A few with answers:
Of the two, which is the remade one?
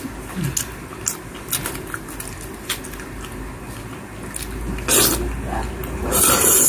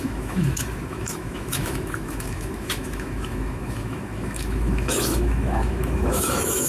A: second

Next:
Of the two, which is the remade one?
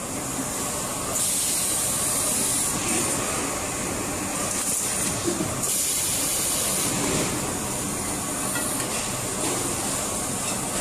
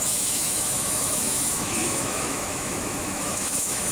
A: second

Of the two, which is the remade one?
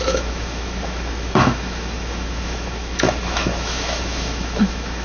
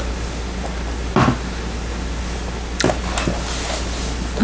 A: first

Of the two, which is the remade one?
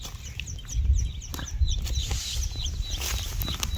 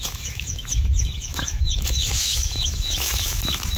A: second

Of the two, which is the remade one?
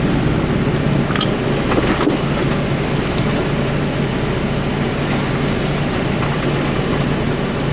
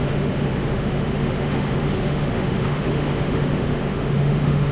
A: second